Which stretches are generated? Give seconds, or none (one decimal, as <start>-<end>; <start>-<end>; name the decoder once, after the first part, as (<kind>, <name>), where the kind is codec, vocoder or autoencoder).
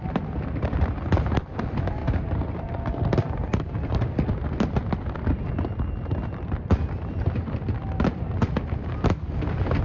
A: 0.0-2.0 (vocoder, BigVGAN v2); 3.1-9.8